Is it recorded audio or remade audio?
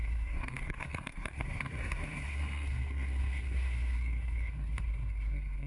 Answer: remade